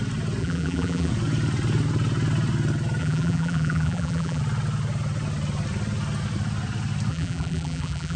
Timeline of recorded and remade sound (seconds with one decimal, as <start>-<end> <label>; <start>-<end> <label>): 0.0-0.4 recorded; 0.4-1.1 remade; 1.1-3.0 recorded; 3.0-4.4 remade; 4.4-7.1 recorded; 7.1-8.2 remade